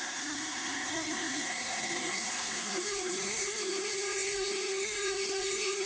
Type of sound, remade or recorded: remade